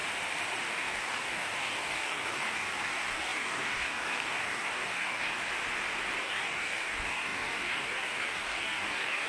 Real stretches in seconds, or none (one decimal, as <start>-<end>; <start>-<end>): 0.0-0.7; 5.5-6.2